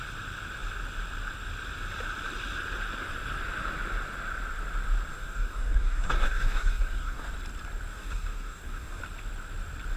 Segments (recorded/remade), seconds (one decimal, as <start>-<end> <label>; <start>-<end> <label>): 0.0-5.1 recorded; 5.1-7.3 remade; 7.3-7.9 recorded; 7.9-9.0 remade; 9.0-10.0 recorded